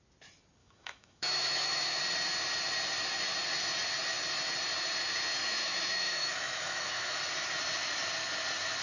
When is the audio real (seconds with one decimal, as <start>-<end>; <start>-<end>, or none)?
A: 0.0-0.6; 2.0-5.4; 7.2-8.8